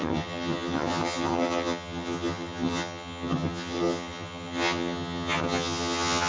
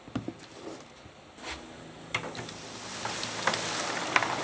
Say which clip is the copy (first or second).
first